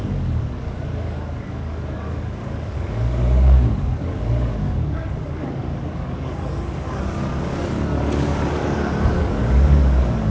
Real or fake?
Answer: fake